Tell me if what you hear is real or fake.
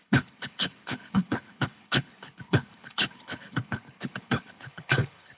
fake